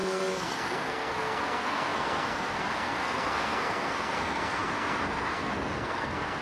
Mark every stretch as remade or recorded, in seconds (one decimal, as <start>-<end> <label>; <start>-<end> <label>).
0.0-6.4 remade